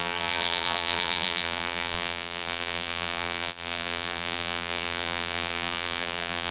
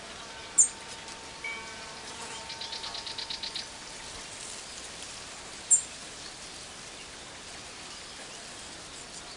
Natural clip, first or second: second